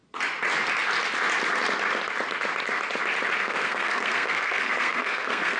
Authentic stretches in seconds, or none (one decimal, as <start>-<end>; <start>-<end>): 0.0-3.4